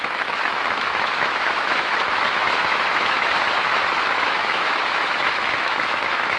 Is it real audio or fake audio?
fake